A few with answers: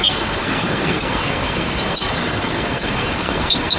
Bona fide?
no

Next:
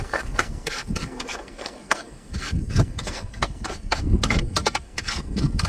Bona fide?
no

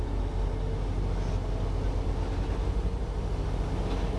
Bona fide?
yes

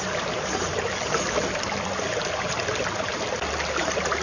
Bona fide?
yes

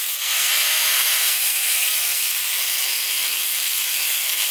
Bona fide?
no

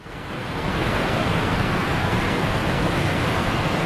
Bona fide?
no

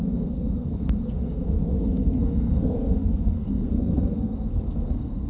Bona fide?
no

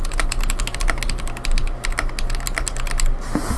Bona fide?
yes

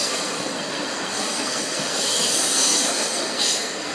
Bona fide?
no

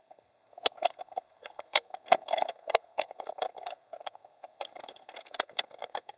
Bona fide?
no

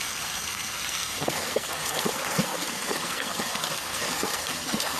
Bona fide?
no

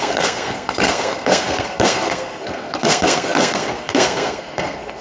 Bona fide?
no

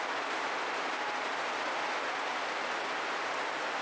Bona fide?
yes